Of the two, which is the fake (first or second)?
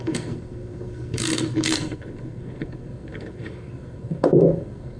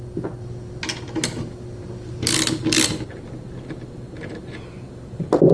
first